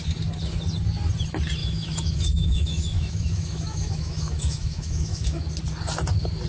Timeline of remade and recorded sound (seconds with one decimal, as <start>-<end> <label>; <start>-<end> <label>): 0.0-1.6 recorded; 1.6-5.5 remade; 5.5-6.5 recorded